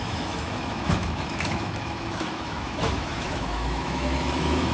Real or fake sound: fake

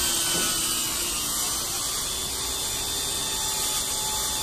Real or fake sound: real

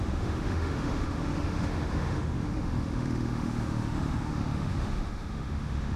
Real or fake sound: fake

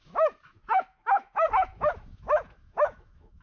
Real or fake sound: fake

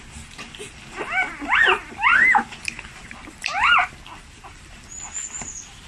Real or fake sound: real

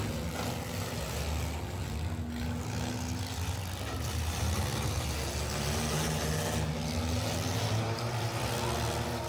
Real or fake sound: real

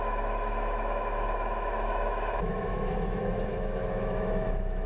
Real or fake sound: fake